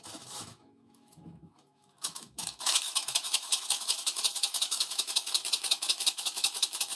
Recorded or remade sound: remade